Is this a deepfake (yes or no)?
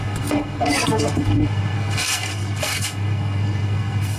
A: yes